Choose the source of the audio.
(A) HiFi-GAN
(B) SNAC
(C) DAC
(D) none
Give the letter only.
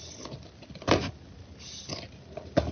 D